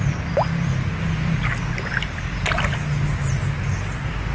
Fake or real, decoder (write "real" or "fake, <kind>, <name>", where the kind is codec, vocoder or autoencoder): real